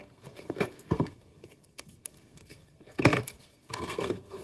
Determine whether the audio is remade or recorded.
remade